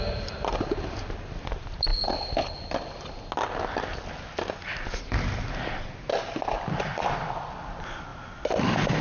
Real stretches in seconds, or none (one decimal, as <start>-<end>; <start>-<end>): 0.0-9.0